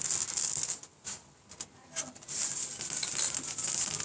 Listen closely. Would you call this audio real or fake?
real